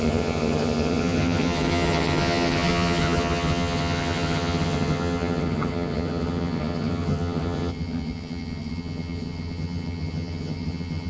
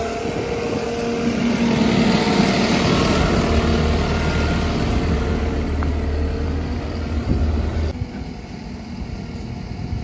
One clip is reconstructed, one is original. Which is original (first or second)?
second